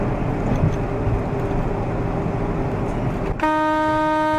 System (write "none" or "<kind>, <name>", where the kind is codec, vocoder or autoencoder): none